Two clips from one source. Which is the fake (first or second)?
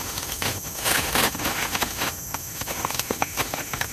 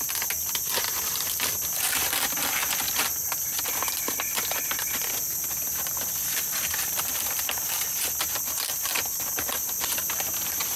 first